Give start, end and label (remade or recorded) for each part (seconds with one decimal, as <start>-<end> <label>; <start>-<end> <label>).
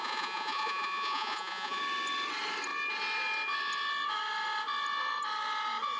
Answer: 0.0-1.8 remade; 1.8-6.0 recorded